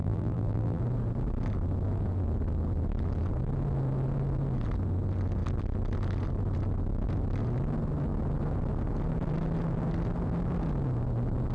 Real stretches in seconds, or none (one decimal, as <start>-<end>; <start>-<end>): 0.8-11.5